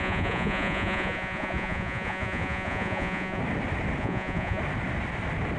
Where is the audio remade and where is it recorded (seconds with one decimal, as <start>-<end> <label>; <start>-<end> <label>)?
0.0-3.4 remade; 3.4-4.0 recorded; 4.0-4.6 remade; 4.6-5.6 recorded